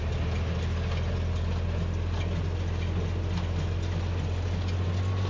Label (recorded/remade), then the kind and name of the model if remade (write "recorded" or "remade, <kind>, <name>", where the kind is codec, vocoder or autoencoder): recorded